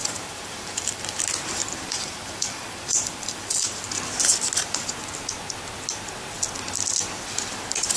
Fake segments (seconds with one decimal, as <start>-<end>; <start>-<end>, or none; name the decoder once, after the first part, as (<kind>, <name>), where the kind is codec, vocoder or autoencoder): 0.0-1.0 (vocoder, BigVGAN v2); 1.6-4.0